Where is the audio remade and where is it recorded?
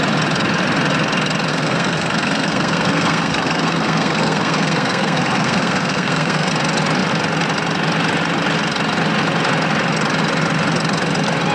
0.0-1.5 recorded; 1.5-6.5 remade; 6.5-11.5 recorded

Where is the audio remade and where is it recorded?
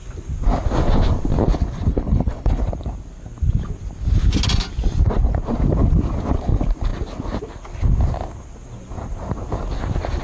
0.0-1.9 recorded; 1.9-2.6 remade; 2.6-10.2 recorded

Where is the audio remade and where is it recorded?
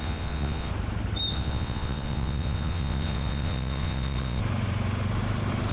0.0-0.7 remade; 0.7-1.3 recorded; 1.3-4.4 remade; 4.4-5.7 recorded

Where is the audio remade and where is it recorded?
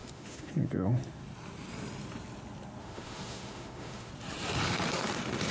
0.0-0.5 remade; 0.5-2.8 recorded; 2.8-4.1 remade; 4.1-5.5 recorded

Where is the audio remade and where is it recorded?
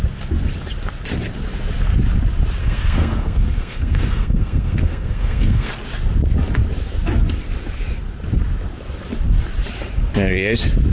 0.0-2.6 recorded; 2.6-5.7 remade; 5.7-10.9 recorded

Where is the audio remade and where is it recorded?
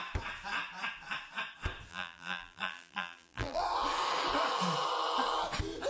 0.0-1.9 recorded; 1.9-3.6 remade; 3.6-5.9 recorded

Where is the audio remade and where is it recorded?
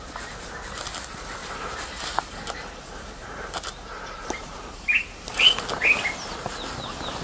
0.0-1.4 recorded; 1.4-5.6 remade; 5.6-7.2 recorded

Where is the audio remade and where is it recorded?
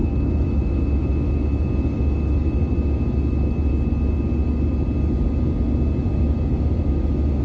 0.0-3.7 remade; 3.7-6.2 recorded; 6.2-7.4 remade